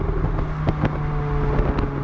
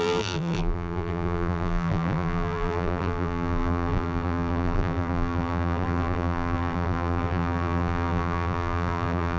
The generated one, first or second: second